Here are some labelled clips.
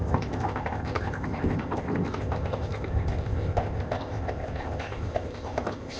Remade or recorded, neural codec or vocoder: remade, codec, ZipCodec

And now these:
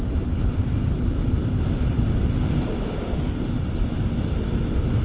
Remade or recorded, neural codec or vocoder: recorded